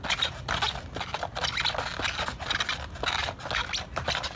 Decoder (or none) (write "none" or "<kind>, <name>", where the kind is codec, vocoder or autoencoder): none